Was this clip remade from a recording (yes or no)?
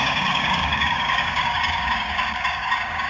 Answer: yes